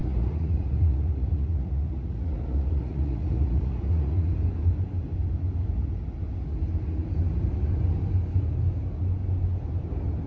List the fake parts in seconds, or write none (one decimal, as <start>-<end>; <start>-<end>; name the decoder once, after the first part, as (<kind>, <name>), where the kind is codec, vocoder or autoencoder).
0.0-4.3 (vocoder, Vocos)